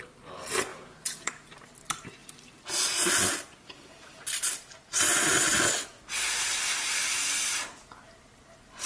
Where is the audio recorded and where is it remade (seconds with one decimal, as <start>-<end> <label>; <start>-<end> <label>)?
0.0-0.7 recorded; 0.7-1.3 remade; 1.3-8.9 recorded